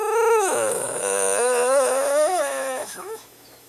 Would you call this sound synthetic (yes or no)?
yes